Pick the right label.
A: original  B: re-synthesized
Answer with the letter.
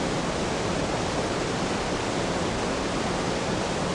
A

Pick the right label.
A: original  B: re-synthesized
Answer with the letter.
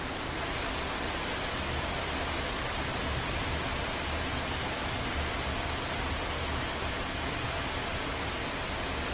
A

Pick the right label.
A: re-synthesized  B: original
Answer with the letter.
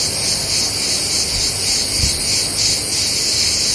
B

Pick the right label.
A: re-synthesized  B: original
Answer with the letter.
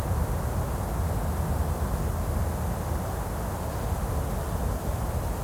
B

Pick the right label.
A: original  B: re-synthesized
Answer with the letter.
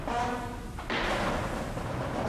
A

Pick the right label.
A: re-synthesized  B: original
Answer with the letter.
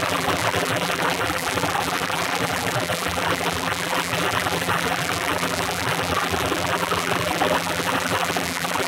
A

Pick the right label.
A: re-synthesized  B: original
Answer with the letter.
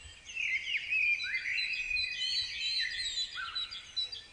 B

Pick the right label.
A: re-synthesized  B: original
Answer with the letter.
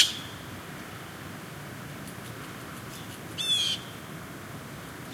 B